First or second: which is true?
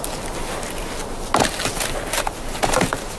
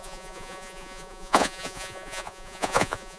first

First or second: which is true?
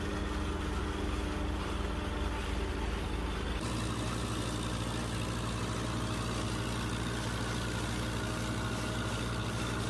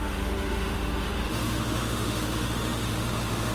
first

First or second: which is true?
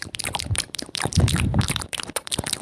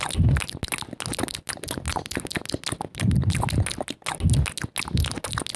second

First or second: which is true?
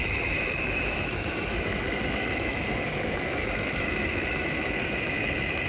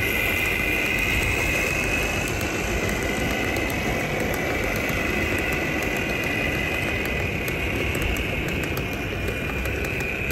second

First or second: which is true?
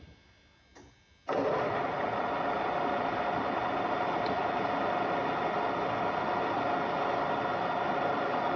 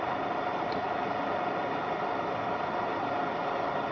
first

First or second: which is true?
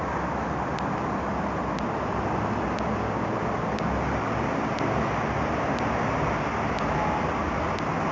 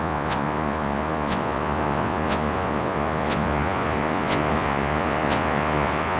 first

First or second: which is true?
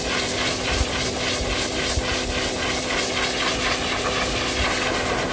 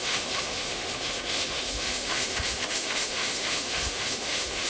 first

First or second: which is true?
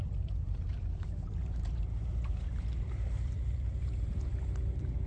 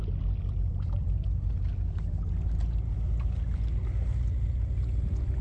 second